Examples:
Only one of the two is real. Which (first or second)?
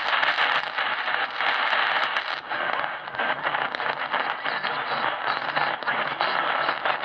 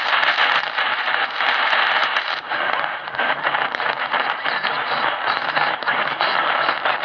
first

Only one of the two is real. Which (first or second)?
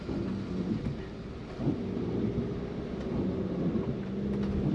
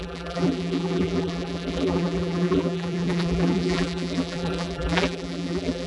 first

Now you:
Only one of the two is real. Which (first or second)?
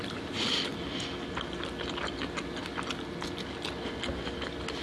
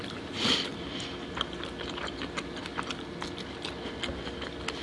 first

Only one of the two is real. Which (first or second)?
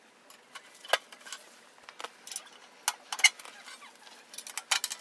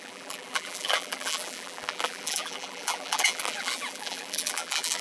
first